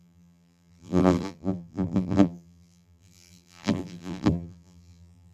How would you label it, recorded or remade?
remade